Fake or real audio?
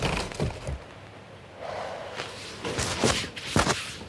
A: real